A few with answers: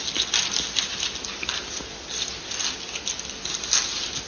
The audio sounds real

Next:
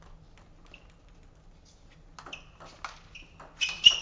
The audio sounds real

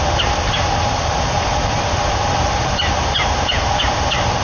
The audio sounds real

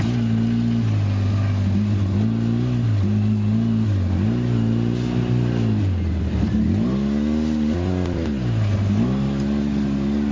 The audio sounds real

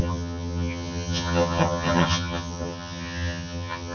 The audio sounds fake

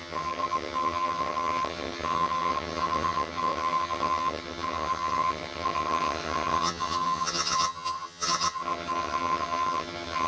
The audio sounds fake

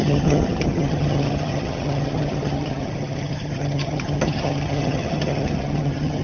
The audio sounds fake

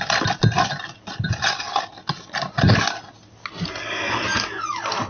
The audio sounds real